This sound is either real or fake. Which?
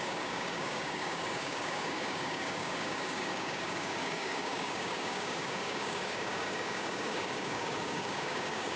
fake